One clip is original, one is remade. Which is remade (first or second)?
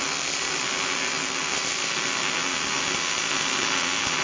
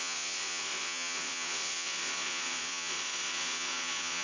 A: second